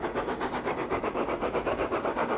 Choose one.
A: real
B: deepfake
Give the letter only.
B